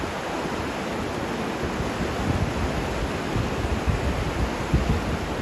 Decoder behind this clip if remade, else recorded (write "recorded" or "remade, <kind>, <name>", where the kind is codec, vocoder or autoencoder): recorded